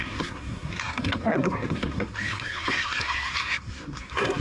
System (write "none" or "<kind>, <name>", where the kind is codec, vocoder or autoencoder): codec, SNAC